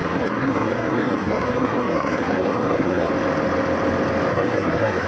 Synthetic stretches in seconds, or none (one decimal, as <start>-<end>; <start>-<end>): 0.0-3.1; 4.3-5.1